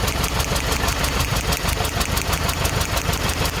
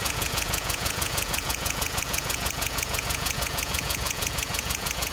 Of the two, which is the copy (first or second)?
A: second